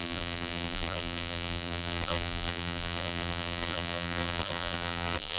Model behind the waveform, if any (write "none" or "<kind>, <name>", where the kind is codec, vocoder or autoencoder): vocoder, BigVGAN v2